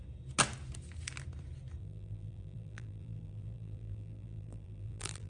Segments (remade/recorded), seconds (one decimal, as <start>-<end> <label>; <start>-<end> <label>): 0.0-1.8 recorded; 1.8-5.3 remade